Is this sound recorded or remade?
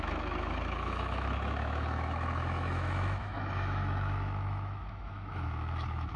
remade